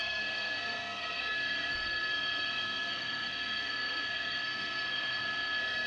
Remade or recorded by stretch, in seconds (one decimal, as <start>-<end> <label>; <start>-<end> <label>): 0.0-5.9 remade